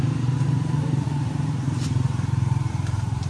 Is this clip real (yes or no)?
no